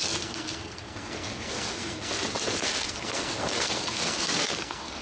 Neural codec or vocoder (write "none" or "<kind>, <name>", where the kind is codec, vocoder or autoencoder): codec, SNAC